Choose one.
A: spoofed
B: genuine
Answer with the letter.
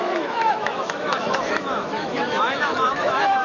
A